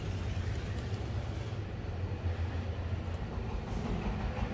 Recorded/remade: recorded